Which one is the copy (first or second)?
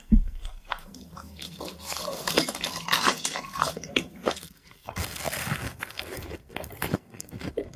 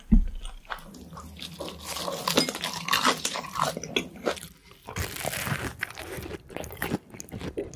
first